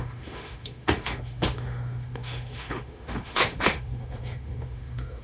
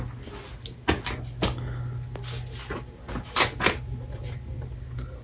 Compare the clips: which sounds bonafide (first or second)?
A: second